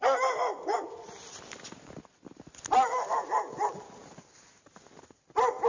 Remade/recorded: recorded